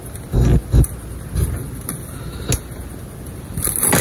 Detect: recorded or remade recorded